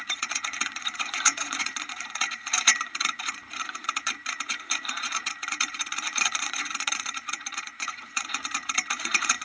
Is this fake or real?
fake